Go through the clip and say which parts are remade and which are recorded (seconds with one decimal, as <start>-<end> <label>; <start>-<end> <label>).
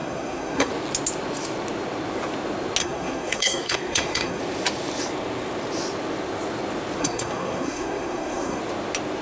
0.0-0.7 remade; 0.7-2.8 recorded; 2.8-4.4 remade; 4.4-7.0 recorded; 7.0-8.6 remade; 8.6-9.2 recorded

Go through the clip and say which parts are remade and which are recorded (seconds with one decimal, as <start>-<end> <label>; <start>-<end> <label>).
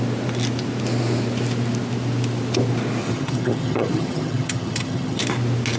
0.0-3.0 recorded; 3.0-5.2 remade; 5.2-5.8 recorded